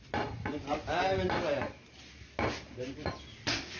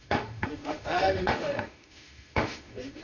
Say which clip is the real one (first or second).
first